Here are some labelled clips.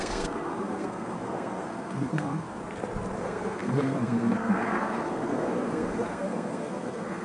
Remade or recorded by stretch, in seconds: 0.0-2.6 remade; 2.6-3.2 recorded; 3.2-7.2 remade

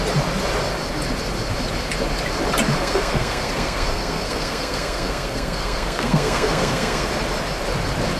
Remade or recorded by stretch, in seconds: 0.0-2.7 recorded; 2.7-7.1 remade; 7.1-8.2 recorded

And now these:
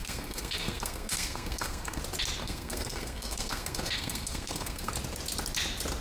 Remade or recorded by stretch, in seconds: 0.0-2.0 remade; 2.0-2.4 recorded; 2.4-4.9 remade; 4.9-6.0 recorded

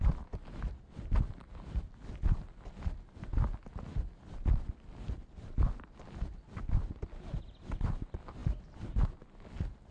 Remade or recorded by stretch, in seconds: 0.0-9.9 recorded

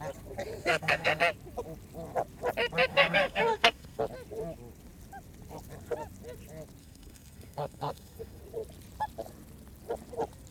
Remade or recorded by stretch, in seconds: 0.0-0.6 recorded; 0.6-1.2 remade; 1.2-2.9 recorded; 2.9-4.0 remade; 4.0-6.8 recorded; 6.8-8.4 remade; 8.4-10.5 recorded